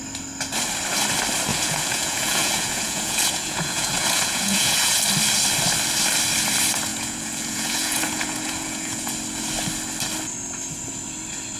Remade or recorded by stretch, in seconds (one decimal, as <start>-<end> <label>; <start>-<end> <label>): 0.0-1.5 recorded; 1.5-5.0 remade; 5.0-6.9 recorded; 6.9-9.1 remade; 9.1-11.6 recorded